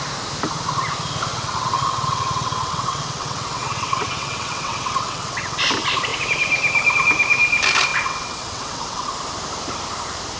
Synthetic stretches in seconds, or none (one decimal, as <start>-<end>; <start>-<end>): 1.3-5.6; 7.9-9.1